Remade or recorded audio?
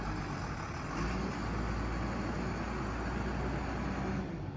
recorded